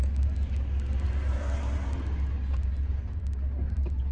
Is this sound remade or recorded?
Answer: recorded